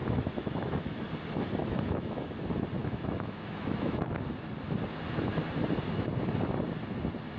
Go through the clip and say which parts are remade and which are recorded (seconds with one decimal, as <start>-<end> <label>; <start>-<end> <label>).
0.0-1.0 remade; 1.0-1.6 recorded; 1.6-2.4 remade; 2.4-2.8 recorded; 2.8-4.2 remade; 4.2-7.4 recorded